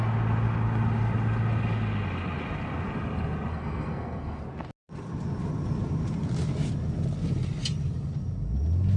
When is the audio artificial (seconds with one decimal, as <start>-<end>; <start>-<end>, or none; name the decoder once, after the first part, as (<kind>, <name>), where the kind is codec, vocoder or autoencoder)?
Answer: 3.5-4.4 (codec, SNAC)